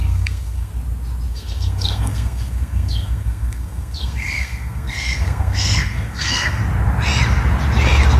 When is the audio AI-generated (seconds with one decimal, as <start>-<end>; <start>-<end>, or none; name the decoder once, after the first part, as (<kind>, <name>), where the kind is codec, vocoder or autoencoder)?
0.0-0.7 (codec, SNAC); 1.3-6.6